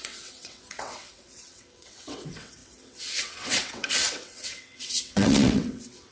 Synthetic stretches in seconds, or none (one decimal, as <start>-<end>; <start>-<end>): 0.0-6.1